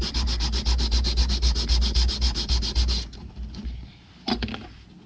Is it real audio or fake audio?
real